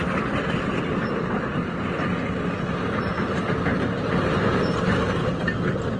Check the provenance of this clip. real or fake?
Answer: real